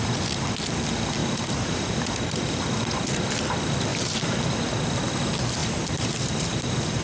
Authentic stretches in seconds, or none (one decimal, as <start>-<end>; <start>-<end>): 0.0-1.2; 1.9-3.9; 4.4-5.6